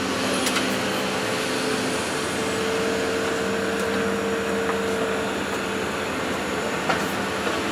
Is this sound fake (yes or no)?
no